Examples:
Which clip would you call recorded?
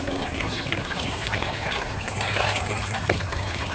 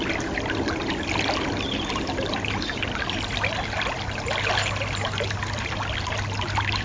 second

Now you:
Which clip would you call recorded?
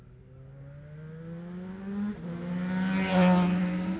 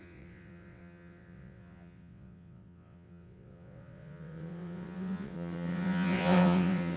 first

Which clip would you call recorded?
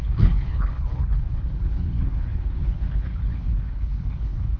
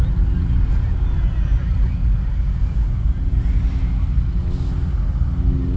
second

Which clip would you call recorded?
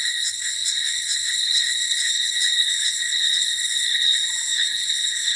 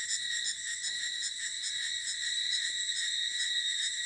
second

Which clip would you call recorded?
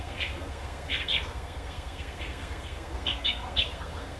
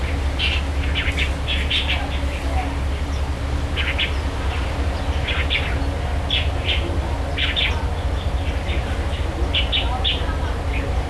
second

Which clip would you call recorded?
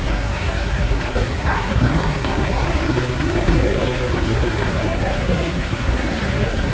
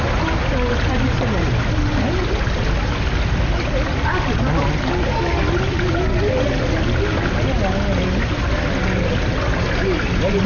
second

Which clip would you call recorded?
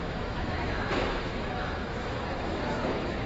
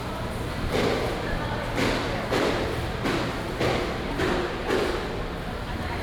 second